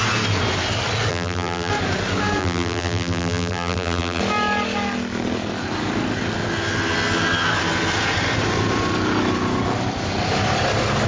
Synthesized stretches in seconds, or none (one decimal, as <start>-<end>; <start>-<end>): 1.1-1.7; 2.4-4.2